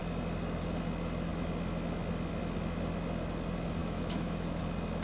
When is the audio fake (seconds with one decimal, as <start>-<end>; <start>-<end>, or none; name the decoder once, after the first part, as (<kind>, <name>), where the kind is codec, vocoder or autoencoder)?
3.8-4.6 (autoencoder, DAC-VAE)